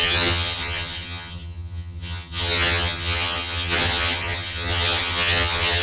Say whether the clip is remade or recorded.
remade